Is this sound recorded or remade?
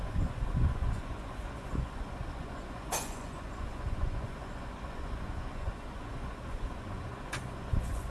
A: remade